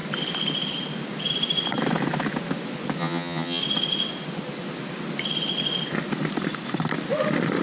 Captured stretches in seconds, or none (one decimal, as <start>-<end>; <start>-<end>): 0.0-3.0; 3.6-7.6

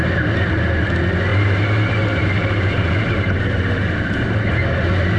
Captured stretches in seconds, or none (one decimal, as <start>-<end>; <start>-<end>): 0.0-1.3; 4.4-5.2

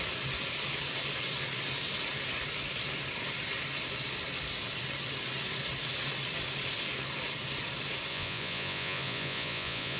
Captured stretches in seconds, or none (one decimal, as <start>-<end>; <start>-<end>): 0.0-8.1

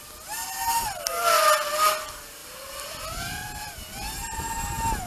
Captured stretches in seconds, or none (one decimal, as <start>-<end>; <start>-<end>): 0.0-2.4; 4.4-5.1

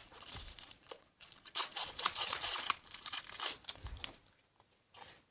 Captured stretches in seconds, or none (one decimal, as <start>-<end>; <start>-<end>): 3.2-5.3

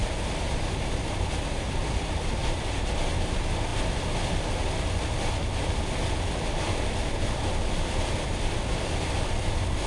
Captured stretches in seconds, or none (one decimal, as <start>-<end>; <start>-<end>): 0.0-9.9